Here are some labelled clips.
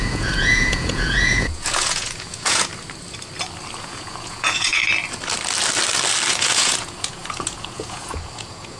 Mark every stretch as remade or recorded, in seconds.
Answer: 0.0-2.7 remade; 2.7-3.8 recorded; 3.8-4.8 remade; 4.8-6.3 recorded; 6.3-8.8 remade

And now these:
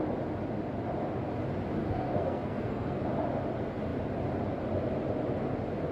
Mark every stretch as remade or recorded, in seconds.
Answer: 0.0-1.8 recorded; 1.8-3.0 remade; 3.0-5.9 recorded

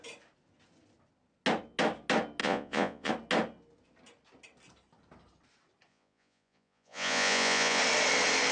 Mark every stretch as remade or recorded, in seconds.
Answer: 0.0-2.4 recorded; 2.4-3.1 remade; 3.1-5.9 recorded; 5.9-7.8 remade; 7.8-8.5 recorded

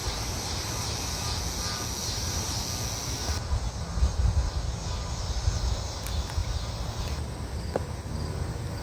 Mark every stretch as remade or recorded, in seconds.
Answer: 0.0-0.7 remade; 0.7-2.0 recorded; 2.0-2.6 remade; 2.6-8.8 recorded